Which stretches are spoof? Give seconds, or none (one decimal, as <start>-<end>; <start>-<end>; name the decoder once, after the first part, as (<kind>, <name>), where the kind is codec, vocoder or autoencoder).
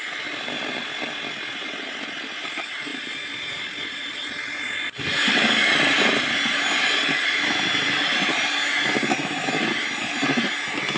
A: none